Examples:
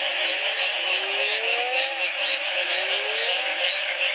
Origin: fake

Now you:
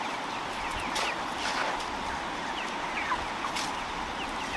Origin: real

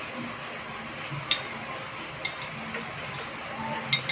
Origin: real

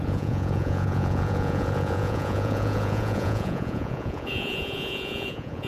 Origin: fake